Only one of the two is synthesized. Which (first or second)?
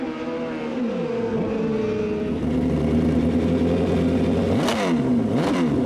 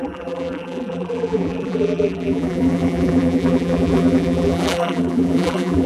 second